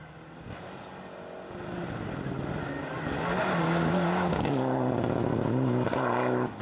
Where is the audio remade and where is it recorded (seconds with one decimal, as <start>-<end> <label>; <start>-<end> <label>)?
0.0-3.6 recorded; 3.6-4.5 remade; 4.5-6.6 recorded